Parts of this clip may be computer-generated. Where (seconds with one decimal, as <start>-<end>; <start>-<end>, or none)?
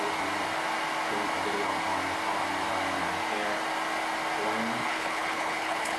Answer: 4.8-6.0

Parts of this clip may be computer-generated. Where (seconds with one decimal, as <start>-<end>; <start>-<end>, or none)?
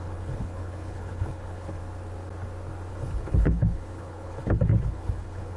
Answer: 0.0-1.8; 2.9-5.6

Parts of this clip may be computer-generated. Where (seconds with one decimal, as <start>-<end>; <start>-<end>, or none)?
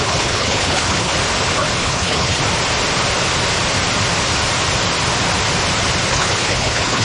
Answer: 0.0-1.1; 1.8-2.4; 6.1-7.0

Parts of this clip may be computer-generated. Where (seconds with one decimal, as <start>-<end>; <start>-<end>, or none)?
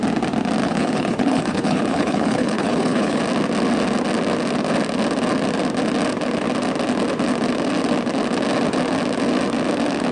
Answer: 0.6-3.2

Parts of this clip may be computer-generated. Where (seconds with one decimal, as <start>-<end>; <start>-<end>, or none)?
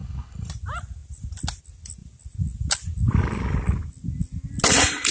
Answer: 0.0-0.5